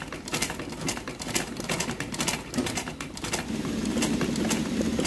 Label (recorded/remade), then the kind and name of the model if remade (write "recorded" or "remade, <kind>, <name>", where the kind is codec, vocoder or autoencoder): recorded